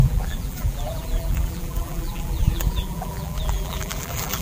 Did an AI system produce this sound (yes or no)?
yes